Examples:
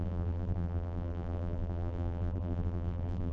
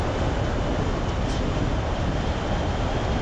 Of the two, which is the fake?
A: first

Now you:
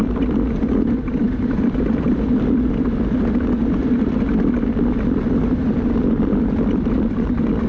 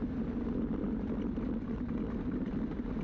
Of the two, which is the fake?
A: first